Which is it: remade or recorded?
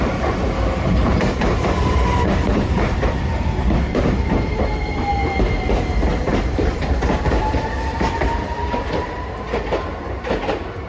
remade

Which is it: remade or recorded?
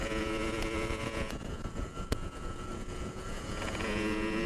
remade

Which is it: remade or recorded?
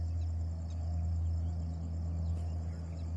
recorded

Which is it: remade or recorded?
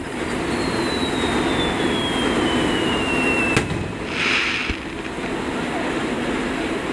recorded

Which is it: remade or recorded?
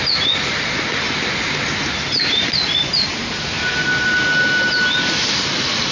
recorded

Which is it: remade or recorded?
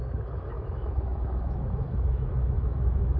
remade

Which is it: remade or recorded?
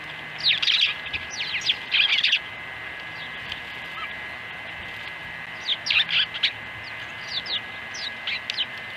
recorded